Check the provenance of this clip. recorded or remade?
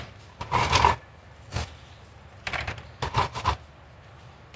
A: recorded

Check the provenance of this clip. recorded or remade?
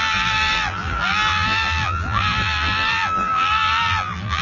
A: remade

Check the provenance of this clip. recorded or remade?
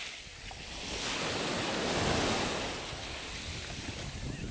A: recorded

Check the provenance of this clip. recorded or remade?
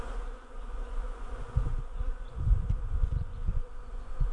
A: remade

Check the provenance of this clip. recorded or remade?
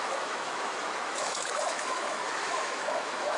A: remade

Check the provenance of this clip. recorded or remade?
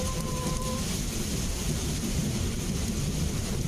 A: remade